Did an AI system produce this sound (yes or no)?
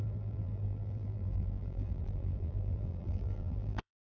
yes